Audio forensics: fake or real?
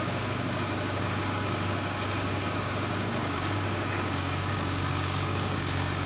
fake